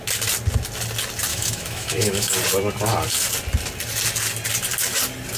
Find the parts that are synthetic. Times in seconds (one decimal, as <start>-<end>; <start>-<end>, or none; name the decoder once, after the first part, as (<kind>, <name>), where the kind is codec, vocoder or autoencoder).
1.3-2.3 (autoencoder, DAC-VAE)